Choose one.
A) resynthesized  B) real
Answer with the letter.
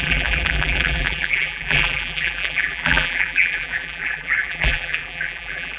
A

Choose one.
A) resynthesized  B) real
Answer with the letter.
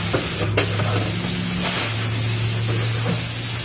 B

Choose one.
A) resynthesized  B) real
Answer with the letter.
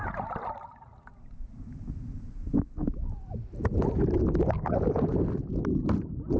B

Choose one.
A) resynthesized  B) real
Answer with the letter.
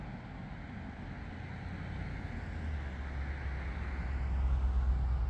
B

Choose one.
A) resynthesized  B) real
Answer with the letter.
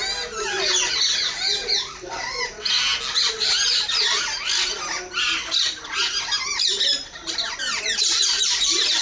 B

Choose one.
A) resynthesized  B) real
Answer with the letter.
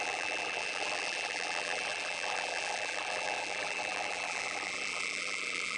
A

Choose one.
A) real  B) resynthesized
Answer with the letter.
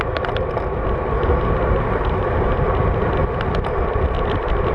A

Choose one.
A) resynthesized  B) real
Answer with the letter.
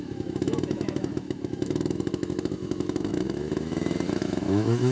A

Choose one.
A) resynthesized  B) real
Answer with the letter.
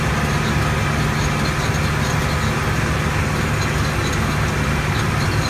B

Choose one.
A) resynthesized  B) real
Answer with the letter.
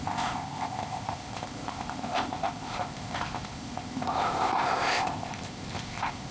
A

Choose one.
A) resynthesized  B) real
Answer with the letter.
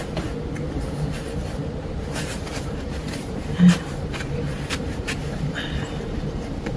A